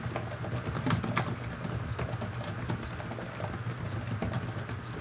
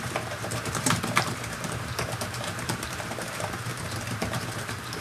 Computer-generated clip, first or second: second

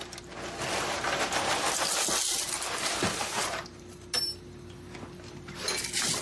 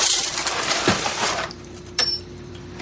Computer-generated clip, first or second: second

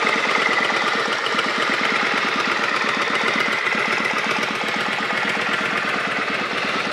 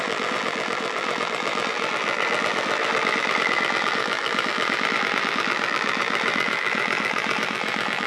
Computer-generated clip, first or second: second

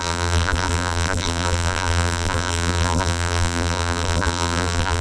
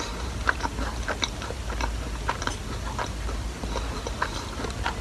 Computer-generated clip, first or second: first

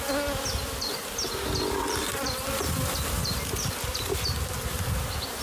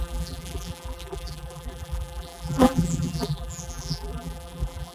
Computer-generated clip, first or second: second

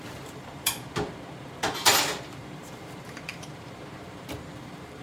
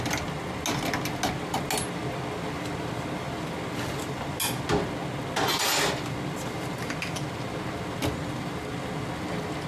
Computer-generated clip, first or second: first